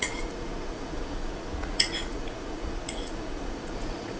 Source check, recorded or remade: remade